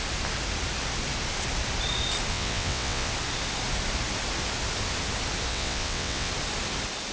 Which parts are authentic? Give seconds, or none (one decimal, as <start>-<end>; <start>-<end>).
0.0-2.3; 3.1-5.5; 6.3-7.1